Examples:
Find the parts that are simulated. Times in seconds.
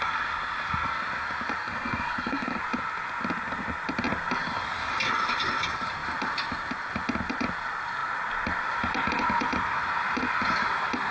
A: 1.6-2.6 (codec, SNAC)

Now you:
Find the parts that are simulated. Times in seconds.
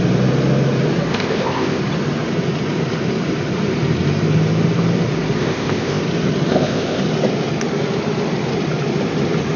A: 1.1-1.8 (codec, ZipCodec); 5.4-6.0; 6.5-7.0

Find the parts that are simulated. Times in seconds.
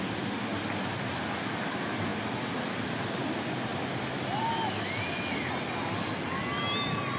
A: none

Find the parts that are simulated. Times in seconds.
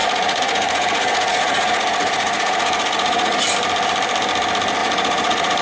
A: 0.0-3.4 (vocoder, Vocos); 4.8-5.6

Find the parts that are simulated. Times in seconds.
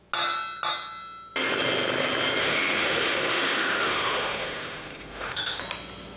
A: 2.4-5.6 (autoencoder, DAC-VAE)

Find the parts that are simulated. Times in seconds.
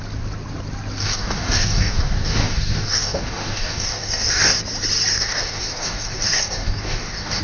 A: 1.0-4.6 (codec, DAC); 5.1-7.4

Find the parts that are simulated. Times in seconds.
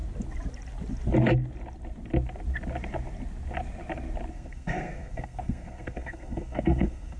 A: 4.3-7.2 (codec, SNAC)